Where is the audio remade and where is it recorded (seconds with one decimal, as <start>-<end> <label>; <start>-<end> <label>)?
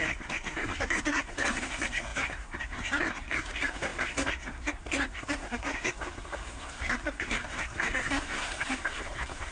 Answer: 0.0-9.5 remade